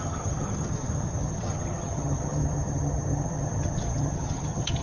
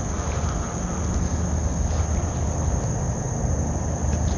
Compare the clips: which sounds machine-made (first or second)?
first